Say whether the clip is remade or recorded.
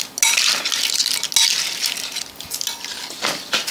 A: recorded